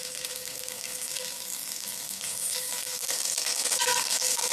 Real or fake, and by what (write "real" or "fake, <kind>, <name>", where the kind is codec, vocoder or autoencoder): fake, codec, SNAC